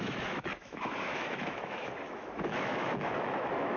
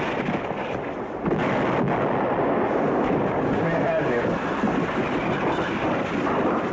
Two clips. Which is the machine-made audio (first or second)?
first